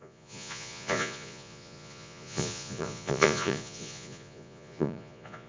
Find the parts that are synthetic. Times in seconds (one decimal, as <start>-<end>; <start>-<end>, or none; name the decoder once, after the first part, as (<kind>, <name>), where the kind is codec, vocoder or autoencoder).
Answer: 0.0-5.5 (vocoder, Vocos)